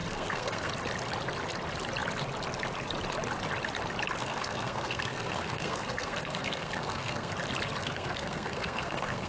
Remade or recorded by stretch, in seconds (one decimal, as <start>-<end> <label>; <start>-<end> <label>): 0.0-0.7 remade; 0.7-4.2 recorded; 4.2-7.3 remade; 7.3-7.8 recorded; 7.8-9.3 remade